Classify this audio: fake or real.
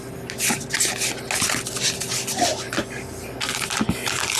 real